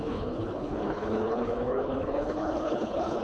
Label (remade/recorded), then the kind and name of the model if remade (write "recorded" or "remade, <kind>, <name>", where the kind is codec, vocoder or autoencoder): remade, codec, HILCodec